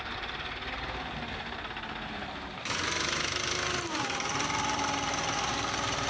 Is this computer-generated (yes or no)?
no